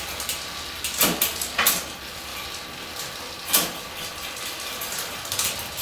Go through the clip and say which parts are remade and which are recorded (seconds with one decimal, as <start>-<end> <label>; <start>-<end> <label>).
0.0-5.8 recorded